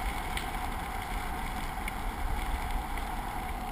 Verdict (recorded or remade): recorded